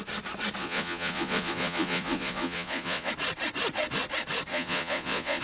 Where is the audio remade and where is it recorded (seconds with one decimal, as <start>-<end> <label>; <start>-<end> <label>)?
0.0-0.6 recorded; 0.6-3.1 remade; 3.1-4.5 recorded; 4.5-5.4 remade